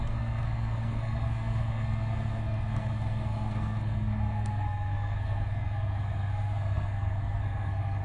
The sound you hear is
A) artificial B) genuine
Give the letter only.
A